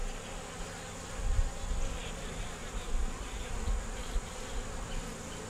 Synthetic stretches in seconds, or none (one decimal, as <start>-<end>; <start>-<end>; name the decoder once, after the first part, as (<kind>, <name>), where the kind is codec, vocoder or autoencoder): 0.0-0.6 (vocoder, BigVGAN v2); 2.0-3.5